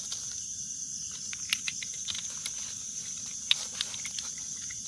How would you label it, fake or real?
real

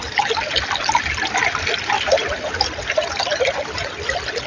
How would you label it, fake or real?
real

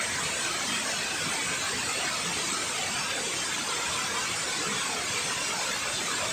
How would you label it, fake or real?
real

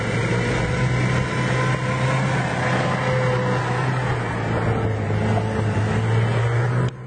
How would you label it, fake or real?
real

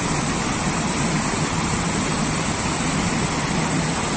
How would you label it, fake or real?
real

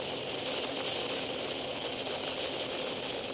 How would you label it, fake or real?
real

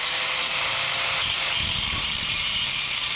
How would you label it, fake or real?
fake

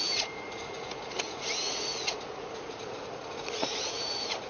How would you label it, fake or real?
fake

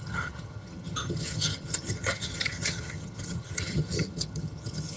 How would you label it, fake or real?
fake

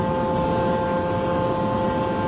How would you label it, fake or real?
real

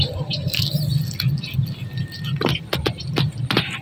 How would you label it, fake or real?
real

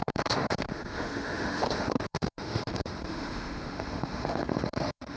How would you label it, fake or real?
fake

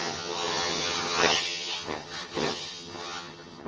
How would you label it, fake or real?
fake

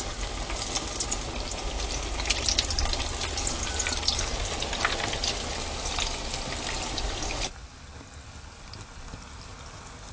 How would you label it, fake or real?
real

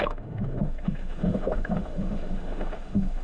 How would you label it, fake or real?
fake